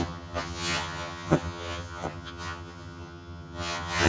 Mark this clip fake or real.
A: fake